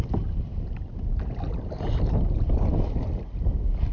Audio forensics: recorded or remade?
recorded